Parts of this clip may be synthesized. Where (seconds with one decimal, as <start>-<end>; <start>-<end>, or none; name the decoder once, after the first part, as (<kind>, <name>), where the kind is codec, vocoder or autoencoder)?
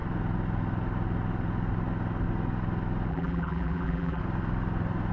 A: 3.1-4.2 (vocoder, BigVGAN v2)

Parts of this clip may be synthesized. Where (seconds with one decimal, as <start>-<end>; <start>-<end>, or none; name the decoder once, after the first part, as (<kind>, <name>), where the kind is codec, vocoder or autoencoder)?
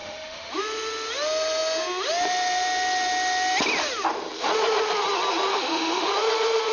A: 0.0-0.5 (autoencoder, DAC-VAE); 5.5-6.1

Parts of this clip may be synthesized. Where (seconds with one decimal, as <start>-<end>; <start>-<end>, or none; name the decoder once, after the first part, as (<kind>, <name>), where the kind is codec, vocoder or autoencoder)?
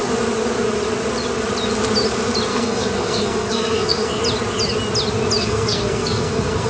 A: 2.5-4.2 (codec, SNAC); 5.4-6.7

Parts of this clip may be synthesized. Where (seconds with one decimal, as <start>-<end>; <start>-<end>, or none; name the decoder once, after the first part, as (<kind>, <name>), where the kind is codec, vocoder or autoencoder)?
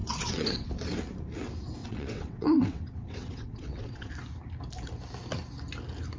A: 0.0-0.7 (vocoder, WaveNeXt); 1.8-4.1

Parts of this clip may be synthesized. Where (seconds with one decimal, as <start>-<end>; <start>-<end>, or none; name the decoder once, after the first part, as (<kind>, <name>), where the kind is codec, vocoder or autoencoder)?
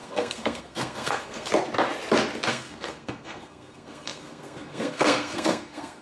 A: 0.0-1.5 (codec, SNAC); 2.5-6.0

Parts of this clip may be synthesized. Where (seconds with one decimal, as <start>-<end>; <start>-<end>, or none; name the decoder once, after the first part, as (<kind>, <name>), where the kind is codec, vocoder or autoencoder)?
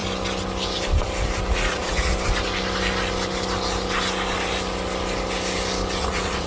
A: 1.5-2.1 (vocoder, Vocos); 6.0-6.5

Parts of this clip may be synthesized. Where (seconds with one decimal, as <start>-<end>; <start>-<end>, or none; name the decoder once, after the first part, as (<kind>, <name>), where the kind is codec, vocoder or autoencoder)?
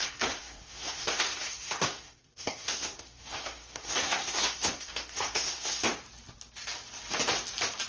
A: 0.0-5.8 (codec, SNAC)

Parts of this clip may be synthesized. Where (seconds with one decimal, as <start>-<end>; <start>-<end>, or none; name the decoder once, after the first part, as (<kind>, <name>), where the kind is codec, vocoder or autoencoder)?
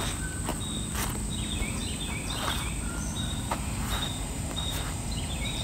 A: 1.8-5.6 (vocoder, BigVGAN v2)